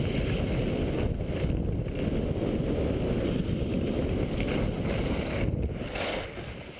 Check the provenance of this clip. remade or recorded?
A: recorded